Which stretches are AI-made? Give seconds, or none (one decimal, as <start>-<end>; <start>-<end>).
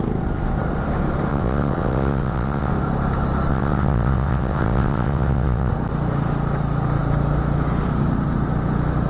1.3-2.7; 3.5-5.7